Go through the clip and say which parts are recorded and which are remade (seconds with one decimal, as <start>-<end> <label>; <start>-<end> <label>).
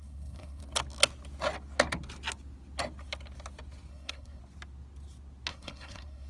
0.0-0.6 remade; 0.6-3.9 recorded; 3.9-4.4 remade; 4.4-5.5 recorded; 5.5-6.3 remade